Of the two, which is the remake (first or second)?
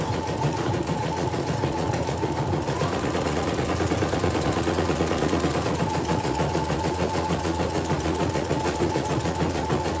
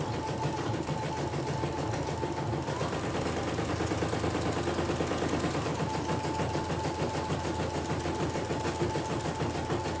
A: first